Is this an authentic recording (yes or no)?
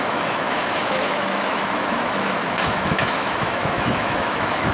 no